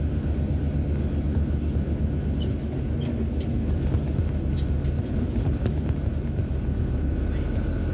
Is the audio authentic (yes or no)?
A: yes